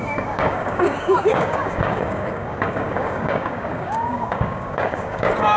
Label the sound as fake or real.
fake